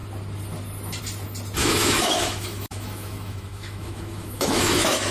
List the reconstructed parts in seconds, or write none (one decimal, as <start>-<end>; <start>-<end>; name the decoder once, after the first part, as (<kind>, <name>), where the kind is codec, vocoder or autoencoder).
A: 1.6-5.1 (autoencoder, DAC-VAE)